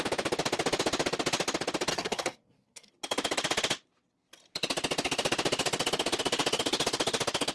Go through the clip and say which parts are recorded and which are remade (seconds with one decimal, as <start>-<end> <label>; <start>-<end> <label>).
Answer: 0.0-1.9 recorded; 1.9-2.9 remade; 2.9-7.5 recorded